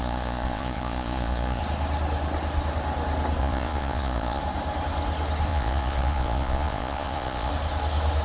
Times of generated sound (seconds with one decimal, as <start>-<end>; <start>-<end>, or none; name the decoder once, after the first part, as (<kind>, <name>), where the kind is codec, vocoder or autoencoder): 0.0-1.6 (vocoder, Vocos); 3.4-4.4; 5.5-7.5